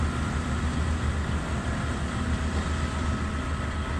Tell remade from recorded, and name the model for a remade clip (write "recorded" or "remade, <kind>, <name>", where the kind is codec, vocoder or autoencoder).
recorded